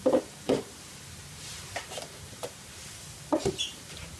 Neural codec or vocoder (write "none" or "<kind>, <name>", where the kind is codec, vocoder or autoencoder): vocoder, BigVGAN v2